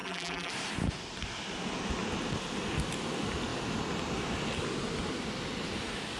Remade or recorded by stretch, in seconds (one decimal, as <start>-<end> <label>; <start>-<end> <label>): 0.0-0.5 remade; 0.5-6.2 recorded